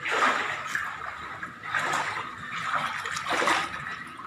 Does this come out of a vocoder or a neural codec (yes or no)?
no